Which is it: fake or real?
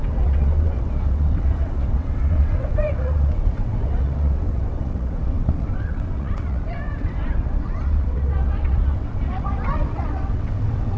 fake